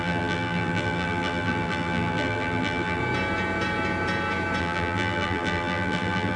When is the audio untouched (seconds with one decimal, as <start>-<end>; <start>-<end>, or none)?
3.0-4.6